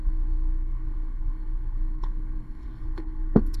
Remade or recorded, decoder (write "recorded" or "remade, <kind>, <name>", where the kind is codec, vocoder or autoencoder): remade, codec, SNAC